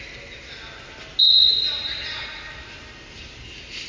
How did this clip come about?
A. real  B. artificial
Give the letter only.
A